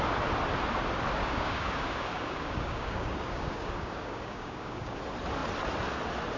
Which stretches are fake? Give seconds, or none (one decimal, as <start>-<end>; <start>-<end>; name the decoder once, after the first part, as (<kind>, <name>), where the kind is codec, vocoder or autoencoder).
1.2-5.0 (codec, DAC)